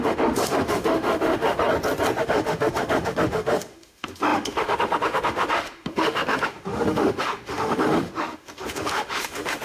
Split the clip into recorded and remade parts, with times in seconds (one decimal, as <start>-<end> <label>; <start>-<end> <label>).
0.0-1.6 remade; 1.6-2.2 recorded; 2.2-9.6 remade